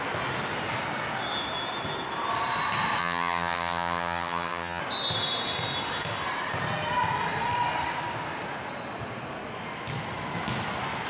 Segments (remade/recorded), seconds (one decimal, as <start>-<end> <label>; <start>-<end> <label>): 0.0-3.0 recorded; 3.0-4.8 remade; 4.8-11.1 recorded